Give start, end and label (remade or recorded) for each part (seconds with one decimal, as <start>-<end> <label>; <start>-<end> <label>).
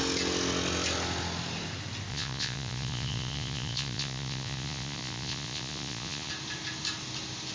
0.0-2.1 recorded; 2.1-6.3 remade; 6.3-7.5 recorded